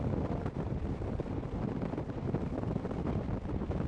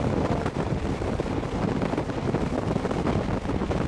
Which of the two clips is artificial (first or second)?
first